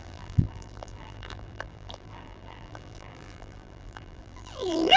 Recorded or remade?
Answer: remade